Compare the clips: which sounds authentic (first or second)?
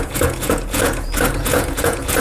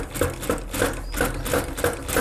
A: second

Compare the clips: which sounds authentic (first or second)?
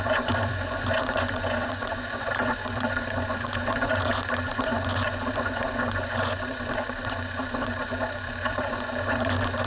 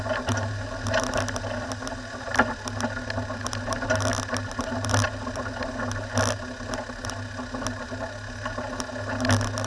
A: second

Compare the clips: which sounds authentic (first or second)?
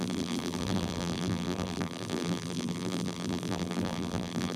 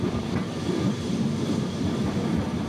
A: second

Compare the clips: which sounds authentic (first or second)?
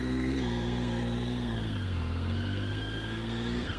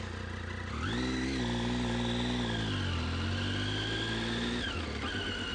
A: second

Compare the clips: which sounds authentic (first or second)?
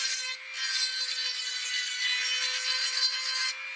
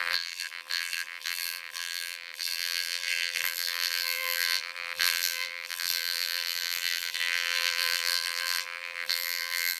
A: first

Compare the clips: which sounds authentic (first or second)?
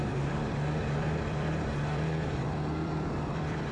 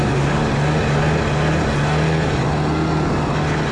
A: second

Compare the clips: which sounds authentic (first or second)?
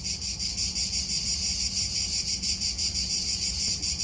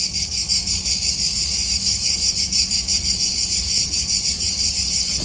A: first